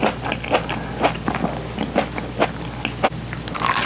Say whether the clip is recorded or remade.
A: recorded